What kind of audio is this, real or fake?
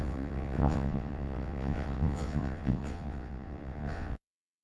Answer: fake